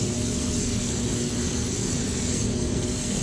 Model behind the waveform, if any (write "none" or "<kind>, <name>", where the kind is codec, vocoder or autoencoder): codec, SNAC